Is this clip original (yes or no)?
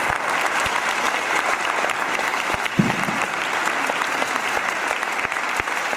yes